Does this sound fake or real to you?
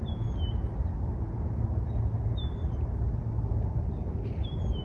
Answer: real